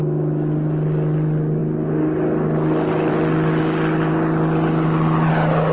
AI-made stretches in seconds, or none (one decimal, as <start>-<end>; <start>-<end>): none